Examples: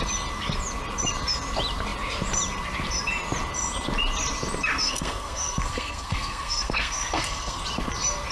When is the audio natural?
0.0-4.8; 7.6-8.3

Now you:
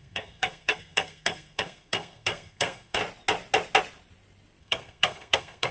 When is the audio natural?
3.0-4.6

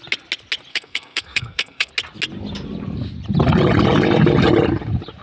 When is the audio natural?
0.0-0.7; 1.9-5.2